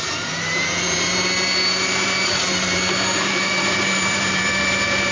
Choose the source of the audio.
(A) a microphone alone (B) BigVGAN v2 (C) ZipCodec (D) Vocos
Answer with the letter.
B